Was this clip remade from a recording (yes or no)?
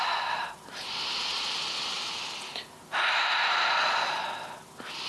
no